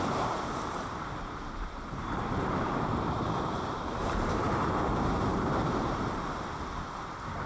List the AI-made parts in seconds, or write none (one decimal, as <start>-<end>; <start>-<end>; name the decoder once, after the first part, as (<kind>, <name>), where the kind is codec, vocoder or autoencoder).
0.0-7.5 (vocoder, BigVGAN v2)